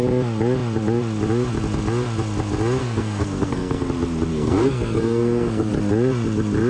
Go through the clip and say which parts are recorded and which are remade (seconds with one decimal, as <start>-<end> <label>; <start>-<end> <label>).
0.0-2.8 recorded; 2.8-3.8 remade; 3.8-4.3 recorded; 4.3-5.7 remade; 5.7-6.7 recorded